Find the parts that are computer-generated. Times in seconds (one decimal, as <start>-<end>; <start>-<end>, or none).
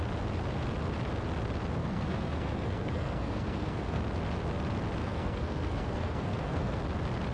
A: 1.8-4.0; 5.0-6.8